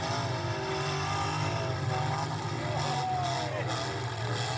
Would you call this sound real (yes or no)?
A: yes